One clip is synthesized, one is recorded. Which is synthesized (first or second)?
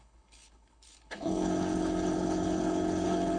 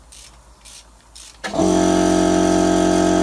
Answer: first